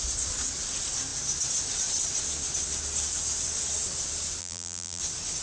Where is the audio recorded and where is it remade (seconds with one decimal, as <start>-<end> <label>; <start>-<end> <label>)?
0.0-4.4 recorded; 4.4-5.0 remade; 5.0-5.4 recorded